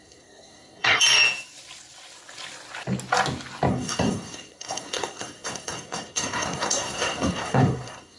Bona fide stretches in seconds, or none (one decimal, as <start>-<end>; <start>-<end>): 1.0-3.7